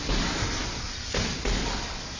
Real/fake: fake